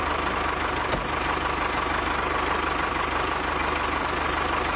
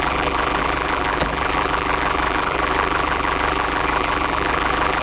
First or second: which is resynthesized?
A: second